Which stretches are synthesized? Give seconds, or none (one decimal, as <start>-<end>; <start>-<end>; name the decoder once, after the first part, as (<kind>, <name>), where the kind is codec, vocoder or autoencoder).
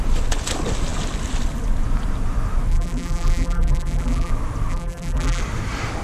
2.7-4.3 (vocoder, BigVGAN v2); 4.7-5.4